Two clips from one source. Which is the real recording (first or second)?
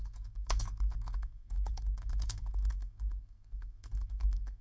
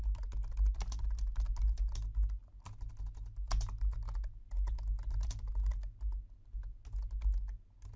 second